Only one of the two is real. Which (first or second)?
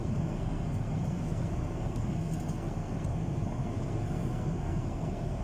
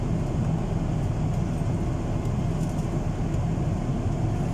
second